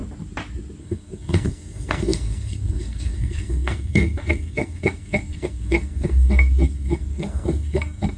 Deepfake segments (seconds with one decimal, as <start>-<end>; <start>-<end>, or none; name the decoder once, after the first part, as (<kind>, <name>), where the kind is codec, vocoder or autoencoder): 0.8-8.2 (codec, SNAC)